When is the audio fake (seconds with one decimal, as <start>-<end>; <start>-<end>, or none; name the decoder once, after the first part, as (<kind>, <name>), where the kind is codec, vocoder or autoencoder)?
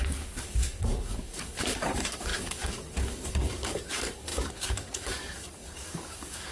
0.0-6.5 (codec, DAC)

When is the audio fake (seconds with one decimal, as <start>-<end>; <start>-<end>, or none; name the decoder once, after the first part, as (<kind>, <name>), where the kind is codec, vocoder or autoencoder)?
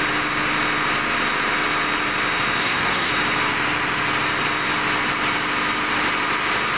2.6-3.1 (codec, SNAC)